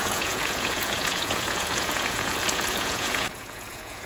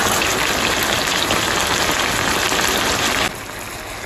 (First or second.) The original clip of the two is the second